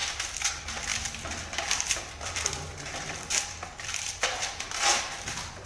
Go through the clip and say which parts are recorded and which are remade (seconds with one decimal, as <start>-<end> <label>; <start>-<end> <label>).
0.0-0.9 recorded; 0.9-4.3 remade; 4.3-5.7 recorded